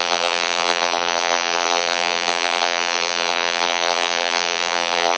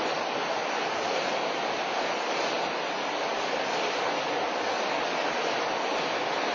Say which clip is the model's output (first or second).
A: first